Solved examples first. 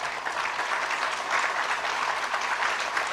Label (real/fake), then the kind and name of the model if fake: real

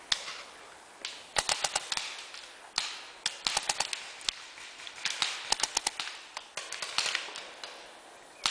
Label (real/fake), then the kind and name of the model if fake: real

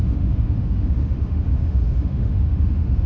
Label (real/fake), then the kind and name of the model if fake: fake, autoencoder, DAC-VAE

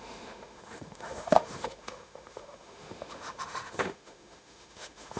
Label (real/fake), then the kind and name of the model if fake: fake, autoencoder, DAC-VAE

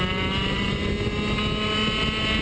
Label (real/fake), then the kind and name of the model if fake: real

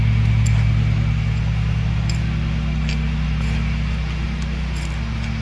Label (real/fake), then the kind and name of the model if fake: real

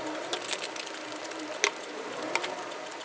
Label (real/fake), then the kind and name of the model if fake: real